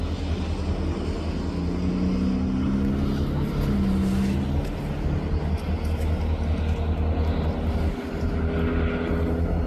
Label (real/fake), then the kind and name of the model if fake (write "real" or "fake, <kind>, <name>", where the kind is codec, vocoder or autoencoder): real